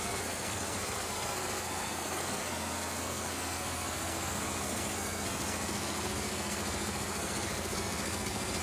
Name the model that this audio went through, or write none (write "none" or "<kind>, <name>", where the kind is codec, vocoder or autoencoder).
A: codec, SNAC